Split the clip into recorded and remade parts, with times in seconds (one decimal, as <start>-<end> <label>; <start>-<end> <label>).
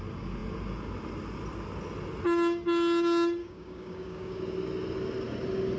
0.0-3.4 recorded; 3.4-4.4 remade; 4.4-5.8 recorded